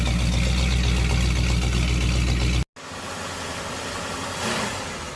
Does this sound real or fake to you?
real